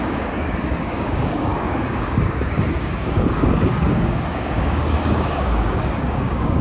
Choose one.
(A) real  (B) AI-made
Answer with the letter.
B